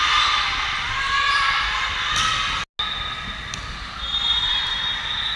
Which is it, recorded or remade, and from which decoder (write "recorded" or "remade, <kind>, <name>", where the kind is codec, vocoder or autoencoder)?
recorded